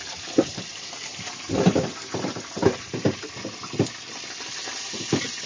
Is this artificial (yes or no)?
yes